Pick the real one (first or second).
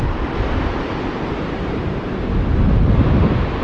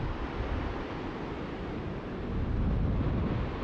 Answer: second